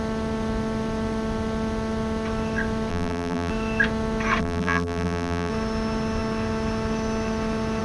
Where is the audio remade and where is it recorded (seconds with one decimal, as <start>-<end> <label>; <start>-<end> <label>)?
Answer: 0.0-2.9 recorded; 2.9-3.5 remade; 3.5-4.4 recorded; 4.4-5.5 remade; 5.5-7.8 recorded